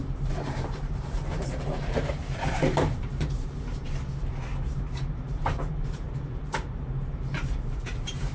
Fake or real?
fake